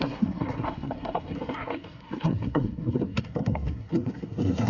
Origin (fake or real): fake